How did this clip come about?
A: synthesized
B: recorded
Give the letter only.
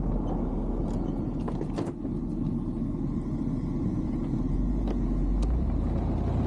B